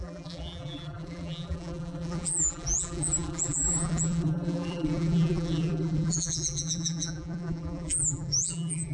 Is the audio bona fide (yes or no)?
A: no